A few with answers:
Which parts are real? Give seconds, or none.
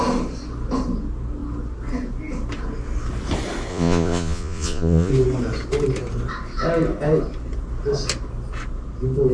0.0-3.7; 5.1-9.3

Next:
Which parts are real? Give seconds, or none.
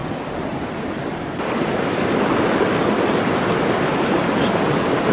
0.0-2.8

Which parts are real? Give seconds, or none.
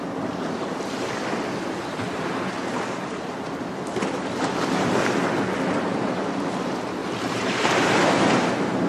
0.0-7.0; 7.9-8.9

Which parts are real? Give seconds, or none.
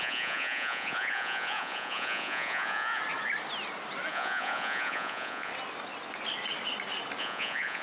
3.0-4.1; 5.5-7.2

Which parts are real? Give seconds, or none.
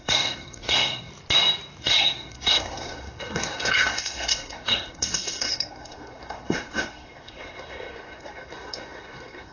1.1-1.8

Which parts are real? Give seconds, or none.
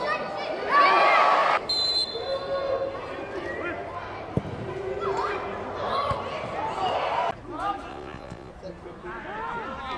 0.0-7.9; 8.5-10.0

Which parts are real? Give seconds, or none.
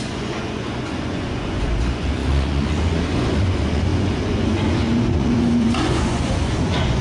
none